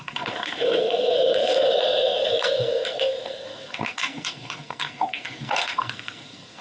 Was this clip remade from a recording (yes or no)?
yes